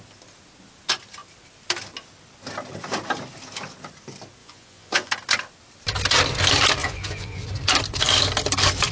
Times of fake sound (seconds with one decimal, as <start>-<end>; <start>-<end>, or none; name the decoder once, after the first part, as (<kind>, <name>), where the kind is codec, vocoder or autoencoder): 4.4-5.1 (vocoder, Vocos); 6.8-7.4